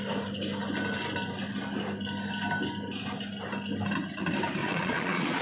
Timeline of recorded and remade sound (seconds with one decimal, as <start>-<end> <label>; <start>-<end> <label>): 0.0-4.6 recorded; 4.6-5.4 remade